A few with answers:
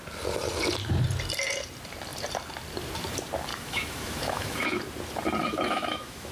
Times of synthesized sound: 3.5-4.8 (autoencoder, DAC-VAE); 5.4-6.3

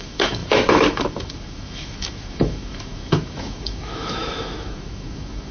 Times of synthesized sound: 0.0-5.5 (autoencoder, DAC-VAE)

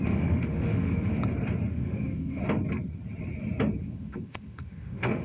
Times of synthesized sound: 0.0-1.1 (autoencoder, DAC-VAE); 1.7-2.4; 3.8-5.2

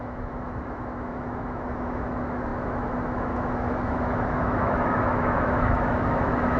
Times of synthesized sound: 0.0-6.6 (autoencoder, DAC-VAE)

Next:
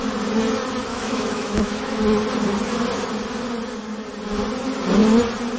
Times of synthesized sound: 0.9-2.0 (autoencoder, DAC-VAE)

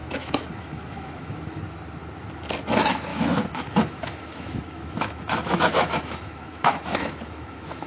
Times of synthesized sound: 0.0-1.6 (autoencoder, DAC-VAE); 3.1-7.9